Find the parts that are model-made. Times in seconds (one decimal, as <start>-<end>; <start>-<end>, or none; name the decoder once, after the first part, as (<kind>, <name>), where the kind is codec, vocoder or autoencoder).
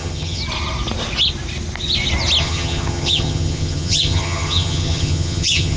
0.0-0.4 (vocoder, HiFi-GAN); 2.4-5.8